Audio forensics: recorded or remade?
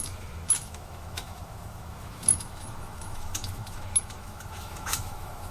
remade